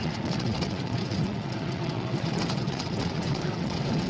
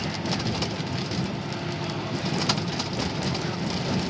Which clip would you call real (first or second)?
second